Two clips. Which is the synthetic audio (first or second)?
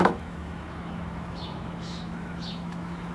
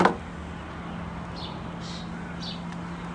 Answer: first